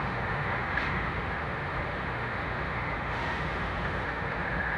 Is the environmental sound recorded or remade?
remade